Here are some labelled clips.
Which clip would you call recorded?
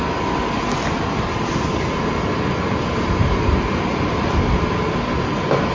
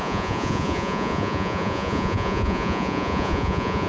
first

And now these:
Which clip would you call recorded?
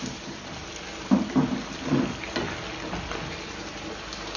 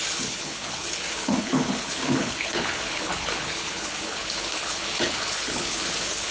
first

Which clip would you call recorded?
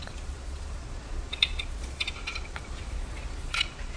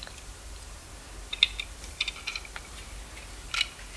second